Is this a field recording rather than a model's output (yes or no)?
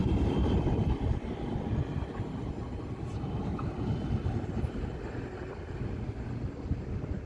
yes